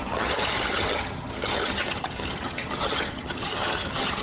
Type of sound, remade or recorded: remade